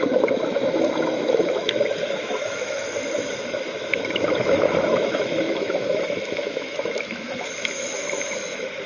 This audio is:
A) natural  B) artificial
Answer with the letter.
B